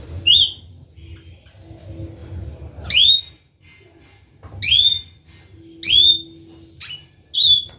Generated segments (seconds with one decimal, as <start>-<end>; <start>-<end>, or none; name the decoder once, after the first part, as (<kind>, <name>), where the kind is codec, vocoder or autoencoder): none